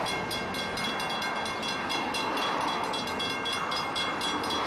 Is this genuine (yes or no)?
yes